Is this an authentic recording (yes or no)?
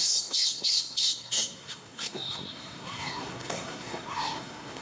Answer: no